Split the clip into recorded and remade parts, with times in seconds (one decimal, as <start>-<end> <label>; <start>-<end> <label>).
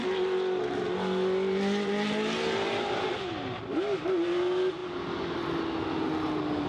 0.0-6.7 recorded